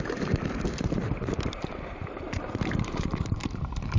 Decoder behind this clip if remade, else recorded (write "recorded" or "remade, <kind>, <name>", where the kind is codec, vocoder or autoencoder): remade, vocoder, BigVGAN v2